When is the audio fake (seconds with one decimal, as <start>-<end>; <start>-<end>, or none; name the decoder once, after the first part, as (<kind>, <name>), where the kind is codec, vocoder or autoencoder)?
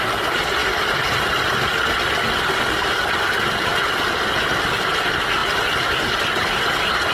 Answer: none